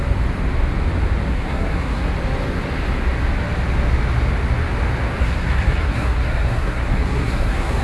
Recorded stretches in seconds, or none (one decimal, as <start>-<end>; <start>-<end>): 0.0-1.3; 2.1-5.2